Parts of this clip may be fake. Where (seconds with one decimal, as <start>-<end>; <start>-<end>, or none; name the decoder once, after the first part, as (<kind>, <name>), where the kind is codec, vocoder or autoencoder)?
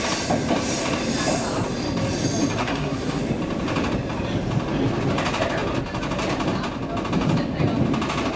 2.6-3.2 (codec, SNAC)